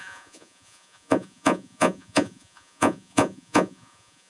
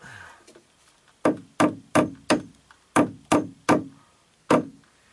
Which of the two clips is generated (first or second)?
first